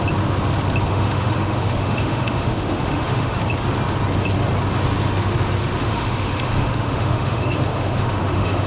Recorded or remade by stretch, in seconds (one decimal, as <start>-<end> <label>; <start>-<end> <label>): 0.0-0.9 recorded; 0.9-3.4 remade; 3.4-5.8 recorded; 5.8-8.7 remade